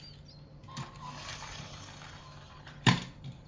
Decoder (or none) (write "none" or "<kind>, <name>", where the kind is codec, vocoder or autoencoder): none